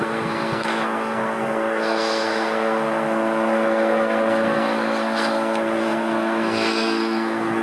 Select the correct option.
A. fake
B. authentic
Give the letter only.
A